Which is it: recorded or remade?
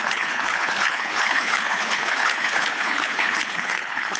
remade